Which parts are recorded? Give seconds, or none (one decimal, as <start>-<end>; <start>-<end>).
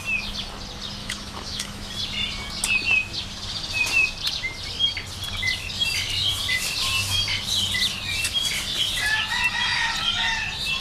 0.0-1.0; 1.9-10.8